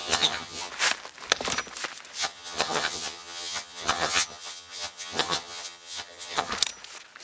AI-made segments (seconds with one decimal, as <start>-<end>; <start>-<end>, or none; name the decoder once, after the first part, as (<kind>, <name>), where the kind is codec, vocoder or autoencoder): 0.0-0.7 (vocoder, HiFi-GAN); 2.2-6.5